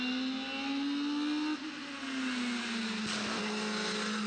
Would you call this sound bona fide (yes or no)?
yes